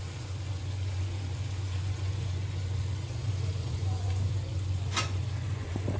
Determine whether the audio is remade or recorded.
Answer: remade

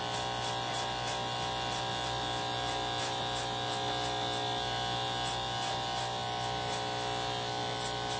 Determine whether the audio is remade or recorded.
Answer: recorded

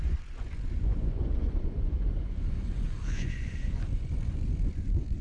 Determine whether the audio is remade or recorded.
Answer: remade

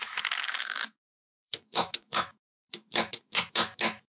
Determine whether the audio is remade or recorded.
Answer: remade